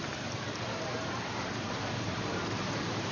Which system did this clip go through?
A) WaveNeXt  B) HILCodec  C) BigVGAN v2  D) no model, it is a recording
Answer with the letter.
C